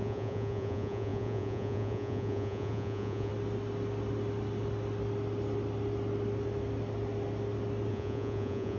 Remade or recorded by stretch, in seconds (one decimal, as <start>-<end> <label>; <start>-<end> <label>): 0.0-3.3 remade; 3.3-7.9 recorded; 7.9-8.8 remade